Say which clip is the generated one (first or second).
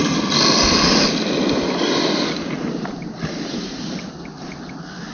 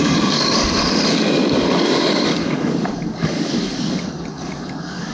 second